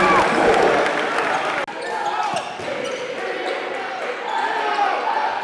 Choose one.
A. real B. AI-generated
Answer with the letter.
A